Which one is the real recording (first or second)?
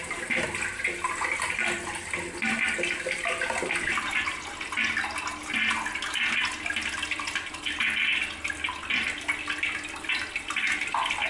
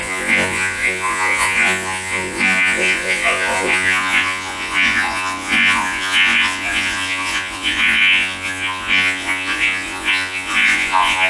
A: first